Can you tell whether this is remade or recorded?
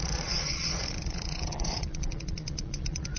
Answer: remade